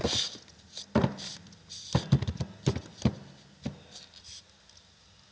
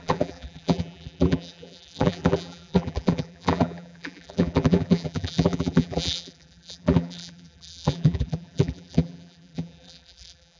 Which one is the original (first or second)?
first